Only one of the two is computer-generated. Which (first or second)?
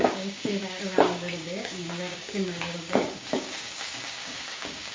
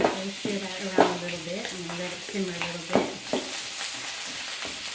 first